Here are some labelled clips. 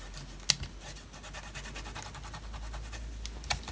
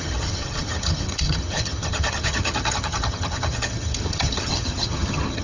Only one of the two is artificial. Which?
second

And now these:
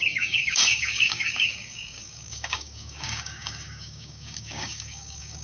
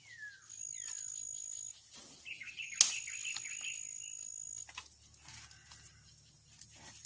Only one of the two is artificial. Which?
first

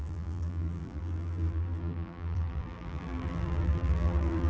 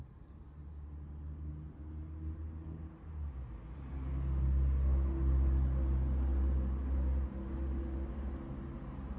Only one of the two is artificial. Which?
first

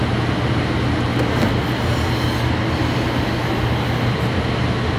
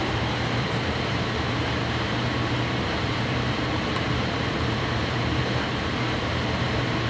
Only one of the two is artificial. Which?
second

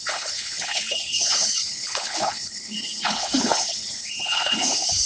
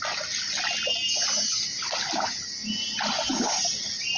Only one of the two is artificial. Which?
first